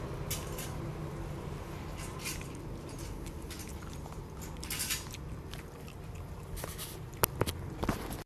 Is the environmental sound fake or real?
real